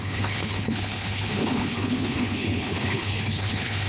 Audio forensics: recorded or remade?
remade